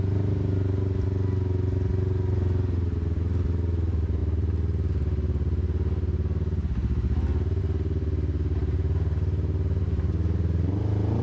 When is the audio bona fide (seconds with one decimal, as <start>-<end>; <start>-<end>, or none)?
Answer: 0.0-11.2